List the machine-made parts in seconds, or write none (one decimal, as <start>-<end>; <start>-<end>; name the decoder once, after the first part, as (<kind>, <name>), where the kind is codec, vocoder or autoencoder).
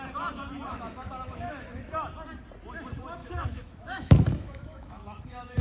0.7-1.9 (autoencoder, DAC-VAE); 3.2-5.6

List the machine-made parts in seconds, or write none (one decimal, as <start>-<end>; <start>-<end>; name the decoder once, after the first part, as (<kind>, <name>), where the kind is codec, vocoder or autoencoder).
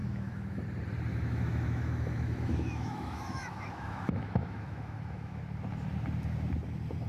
0.0-0.6 (autoencoder, DAC-VAE); 1.1-5.4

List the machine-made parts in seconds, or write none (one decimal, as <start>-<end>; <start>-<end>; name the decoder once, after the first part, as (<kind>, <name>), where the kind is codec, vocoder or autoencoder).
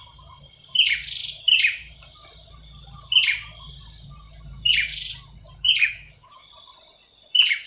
5.8-6.5 (autoencoder, DAC-VAE)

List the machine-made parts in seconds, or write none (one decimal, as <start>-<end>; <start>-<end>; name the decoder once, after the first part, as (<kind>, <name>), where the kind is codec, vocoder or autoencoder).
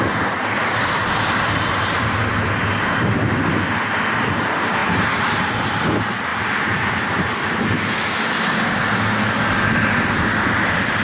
none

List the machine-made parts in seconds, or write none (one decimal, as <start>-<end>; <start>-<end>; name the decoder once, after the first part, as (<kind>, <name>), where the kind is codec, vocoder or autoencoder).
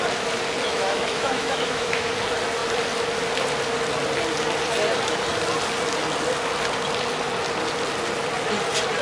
0.7-2.1 (autoencoder, DAC-VAE)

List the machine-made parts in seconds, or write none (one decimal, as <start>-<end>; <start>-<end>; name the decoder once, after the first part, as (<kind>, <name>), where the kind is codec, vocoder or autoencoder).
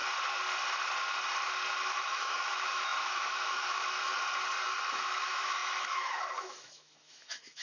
1.9-4.1 (autoencoder, DAC-VAE); 4.9-7.6